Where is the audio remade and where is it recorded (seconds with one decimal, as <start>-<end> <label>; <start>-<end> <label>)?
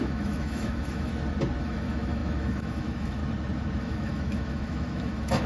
0.0-1.1 remade; 1.1-1.6 recorded; 1.6-3.2 remade; 3.2-3.8 recorded; 3.8-5.5 remade